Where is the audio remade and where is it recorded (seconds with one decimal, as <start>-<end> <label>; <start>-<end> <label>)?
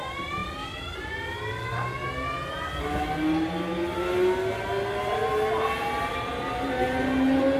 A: 0.0-7.6 recorded